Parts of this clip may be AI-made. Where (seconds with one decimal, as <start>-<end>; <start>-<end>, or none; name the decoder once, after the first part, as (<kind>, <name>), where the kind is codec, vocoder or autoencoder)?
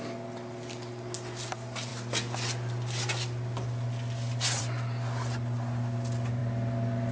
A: none